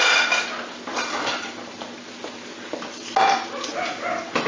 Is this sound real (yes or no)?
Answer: yes